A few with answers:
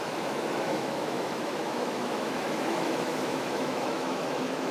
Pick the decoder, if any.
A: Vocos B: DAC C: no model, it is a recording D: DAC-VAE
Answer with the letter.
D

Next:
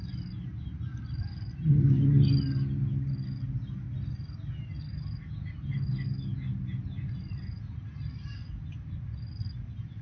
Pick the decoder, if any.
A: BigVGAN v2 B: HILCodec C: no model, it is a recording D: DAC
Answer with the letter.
C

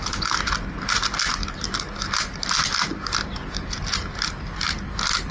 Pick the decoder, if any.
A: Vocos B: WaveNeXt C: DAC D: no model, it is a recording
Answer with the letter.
D